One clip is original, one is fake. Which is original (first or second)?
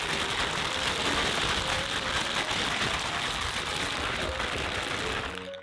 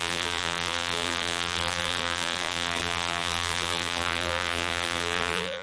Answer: first